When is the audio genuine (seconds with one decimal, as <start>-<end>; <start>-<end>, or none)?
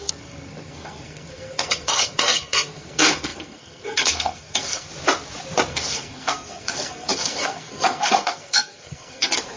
4.9-5.7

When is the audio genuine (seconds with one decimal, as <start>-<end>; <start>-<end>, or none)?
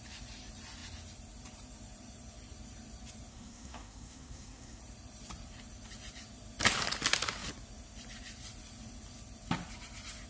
0.0-3.3; 4.8-10.3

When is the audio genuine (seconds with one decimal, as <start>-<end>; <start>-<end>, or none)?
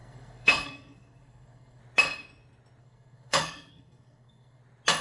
1.8-2.8; 4.6-5.0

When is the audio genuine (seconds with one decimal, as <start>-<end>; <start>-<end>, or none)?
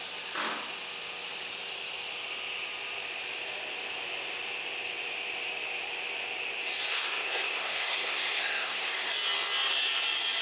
0.0-6.9; 9.1-10.4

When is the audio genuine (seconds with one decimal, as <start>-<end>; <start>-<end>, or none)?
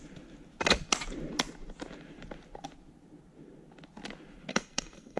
0.0-4.5